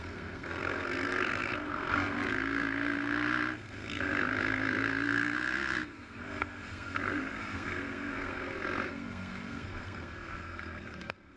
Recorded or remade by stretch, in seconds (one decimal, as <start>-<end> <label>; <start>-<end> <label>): 0.0-11.4 remade

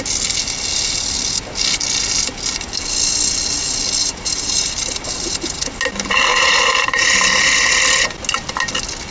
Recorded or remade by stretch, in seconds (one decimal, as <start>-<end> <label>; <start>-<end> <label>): 0.0-4.0 recorded; 4.0-5.6 remade; 5.6-6.3 recorded; 6.3-7.8 remade; 7.8-9.1 recorded

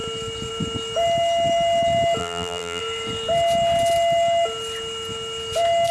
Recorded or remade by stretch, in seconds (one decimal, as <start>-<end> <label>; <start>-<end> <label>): 0.0-2.2 recorded; 2.2-2.8 remade; 2.8-5.9 recorded

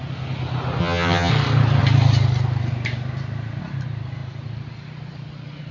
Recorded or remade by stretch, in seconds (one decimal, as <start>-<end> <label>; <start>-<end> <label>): 0.0-0.8 recorded; 0.8-1.3 remade; 1.3-5.7 recorded